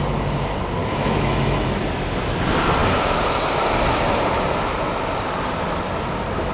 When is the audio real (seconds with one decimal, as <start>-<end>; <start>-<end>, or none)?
0.0-0.8; 1.8-6.5